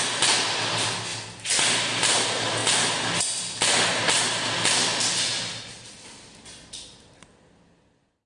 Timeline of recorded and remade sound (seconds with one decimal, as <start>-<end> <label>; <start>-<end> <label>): 0.0-1.1 recorded; 1.1-1.6 remade; 1.6-5.3 recorded; 5.3-6.6 remade; 6.6-8.3 recorded